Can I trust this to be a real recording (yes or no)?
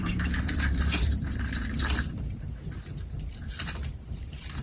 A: no